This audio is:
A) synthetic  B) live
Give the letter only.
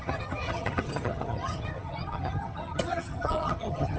A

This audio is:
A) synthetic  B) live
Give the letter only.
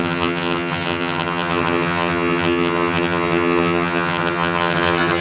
A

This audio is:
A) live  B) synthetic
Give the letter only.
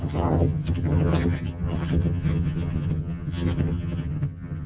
B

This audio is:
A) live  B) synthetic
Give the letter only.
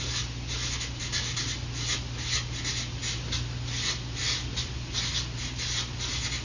A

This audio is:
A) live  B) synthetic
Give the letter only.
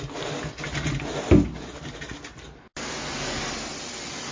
A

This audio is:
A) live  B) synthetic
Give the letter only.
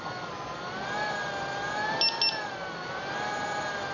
A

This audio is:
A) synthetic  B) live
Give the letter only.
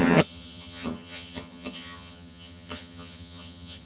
A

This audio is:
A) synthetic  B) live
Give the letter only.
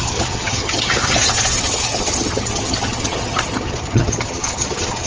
A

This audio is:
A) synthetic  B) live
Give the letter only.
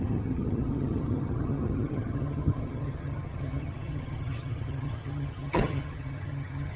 A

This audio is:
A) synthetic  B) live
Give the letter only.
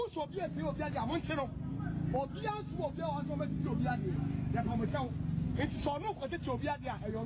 B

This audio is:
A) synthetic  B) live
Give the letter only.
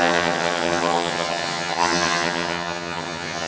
A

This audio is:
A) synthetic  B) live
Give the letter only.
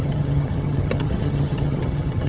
A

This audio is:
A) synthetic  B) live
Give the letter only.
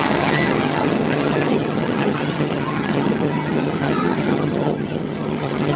A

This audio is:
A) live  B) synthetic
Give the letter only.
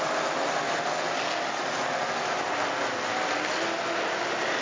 A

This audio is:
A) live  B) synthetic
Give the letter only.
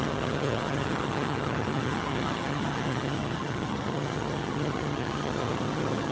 B